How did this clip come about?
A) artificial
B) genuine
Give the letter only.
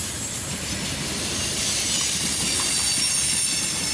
B